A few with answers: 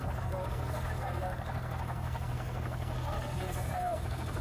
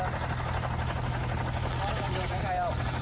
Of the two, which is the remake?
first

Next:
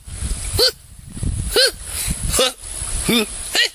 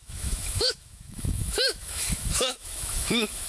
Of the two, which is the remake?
second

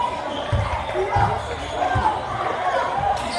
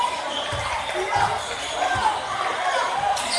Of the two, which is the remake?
second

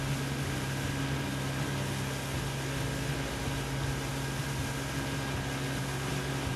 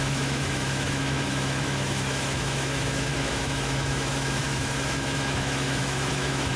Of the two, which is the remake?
second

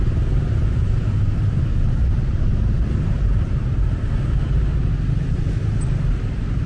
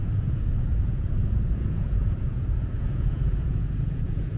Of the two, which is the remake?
second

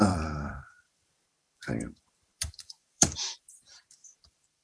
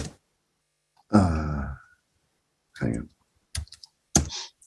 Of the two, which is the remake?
first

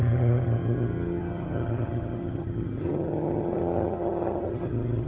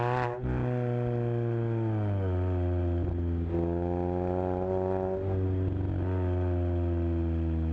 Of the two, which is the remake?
first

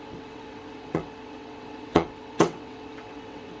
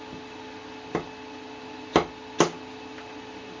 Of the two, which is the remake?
first